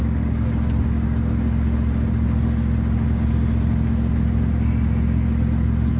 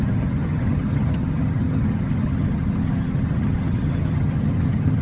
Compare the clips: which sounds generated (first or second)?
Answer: second